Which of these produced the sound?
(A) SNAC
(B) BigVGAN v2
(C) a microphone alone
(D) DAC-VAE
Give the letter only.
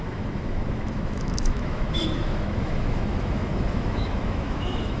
D